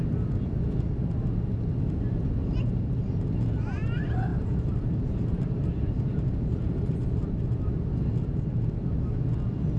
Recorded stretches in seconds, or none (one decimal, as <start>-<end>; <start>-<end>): 0.0-2.4; 3.2-4.3; 7.9-9.8